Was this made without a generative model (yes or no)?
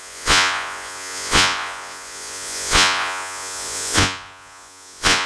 no